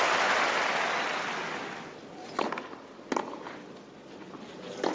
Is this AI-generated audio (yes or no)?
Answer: no